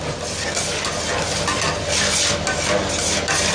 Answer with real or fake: real